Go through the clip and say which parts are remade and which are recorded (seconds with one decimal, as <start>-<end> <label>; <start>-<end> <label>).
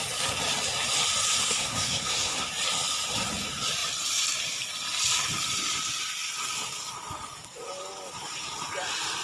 0.0-1.4 recorded; 1.4-2.5 remade; 2.5-9.2 recorded